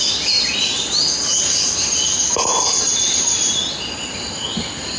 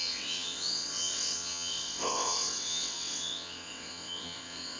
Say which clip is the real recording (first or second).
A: first